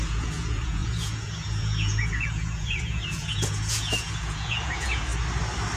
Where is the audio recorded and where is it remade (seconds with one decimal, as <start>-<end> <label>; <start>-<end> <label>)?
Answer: 0.0-5.1 remade; 5.1-5.8 recorded